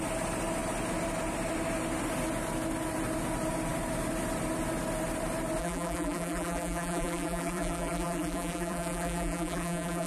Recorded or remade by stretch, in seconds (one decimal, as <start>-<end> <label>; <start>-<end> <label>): 0.0-5.6 recorded; 5.6-10.1 remade